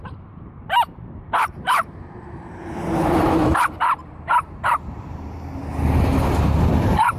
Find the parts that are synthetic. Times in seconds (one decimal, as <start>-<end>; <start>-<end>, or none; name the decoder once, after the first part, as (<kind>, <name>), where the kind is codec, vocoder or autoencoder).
0.0-5.6 (vocoder, BigVGAN v2); 6.8-7.2